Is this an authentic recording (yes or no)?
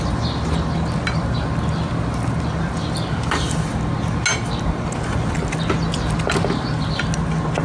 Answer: yes